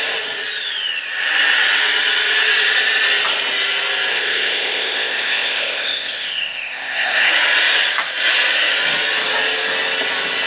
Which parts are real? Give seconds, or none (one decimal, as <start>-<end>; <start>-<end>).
0.0-4.1; 7.3-10.5